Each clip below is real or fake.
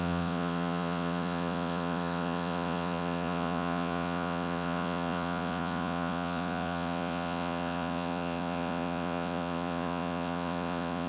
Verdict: fake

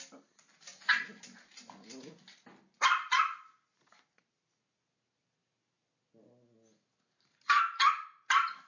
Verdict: real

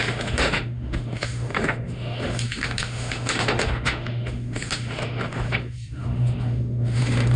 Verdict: fake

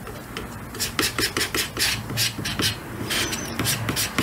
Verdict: real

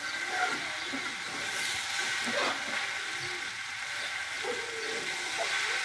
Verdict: real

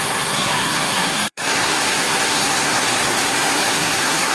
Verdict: fake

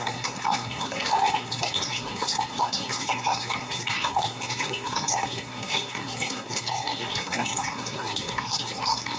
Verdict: fake